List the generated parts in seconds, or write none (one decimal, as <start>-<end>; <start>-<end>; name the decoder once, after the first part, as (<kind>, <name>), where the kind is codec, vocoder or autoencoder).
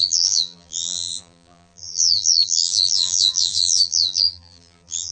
0.0-5.1 (vocoder, BigVGAN v2)